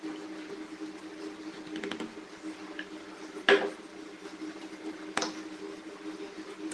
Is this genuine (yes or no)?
yes